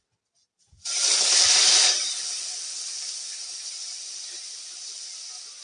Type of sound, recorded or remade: recorded